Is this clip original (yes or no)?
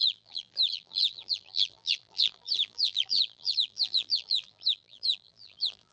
no